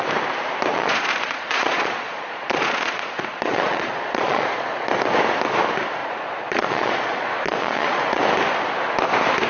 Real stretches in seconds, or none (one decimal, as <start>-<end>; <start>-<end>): 0.0-0.7; 4.9-6.0; 8.2-9.5